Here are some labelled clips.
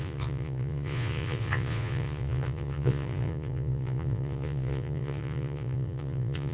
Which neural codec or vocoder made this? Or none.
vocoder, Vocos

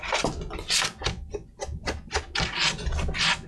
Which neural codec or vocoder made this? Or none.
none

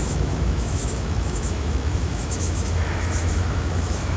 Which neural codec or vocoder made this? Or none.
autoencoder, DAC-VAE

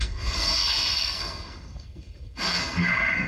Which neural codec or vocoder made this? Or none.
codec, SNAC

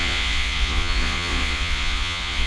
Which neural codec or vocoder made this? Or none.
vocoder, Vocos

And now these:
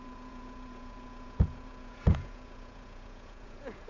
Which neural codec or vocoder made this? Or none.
vocoder, Vocos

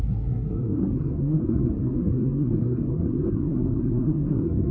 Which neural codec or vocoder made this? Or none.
codec, SNAC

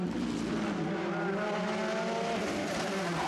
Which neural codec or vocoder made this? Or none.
none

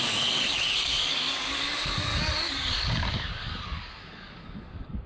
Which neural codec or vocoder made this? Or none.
codec, DAC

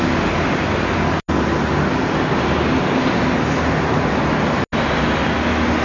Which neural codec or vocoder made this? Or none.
none